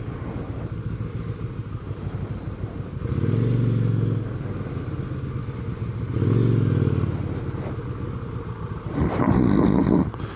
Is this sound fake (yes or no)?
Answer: no